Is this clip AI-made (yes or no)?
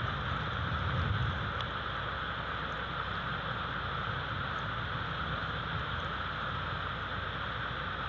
no